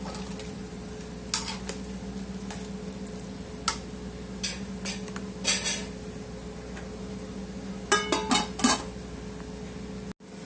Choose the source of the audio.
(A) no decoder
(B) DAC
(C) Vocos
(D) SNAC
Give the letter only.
A